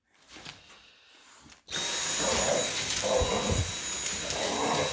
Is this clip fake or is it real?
real